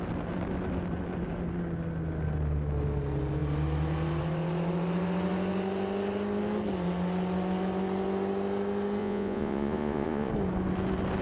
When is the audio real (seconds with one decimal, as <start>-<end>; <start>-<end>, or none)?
0.0-9.0; 10.3-11.2